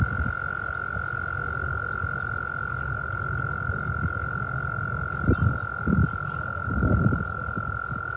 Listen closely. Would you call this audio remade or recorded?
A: recorded